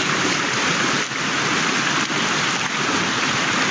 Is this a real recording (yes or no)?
yes